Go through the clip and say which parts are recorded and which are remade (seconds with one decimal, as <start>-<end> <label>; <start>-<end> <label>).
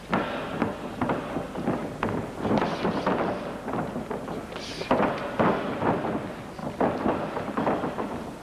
0.0-8.4 recorded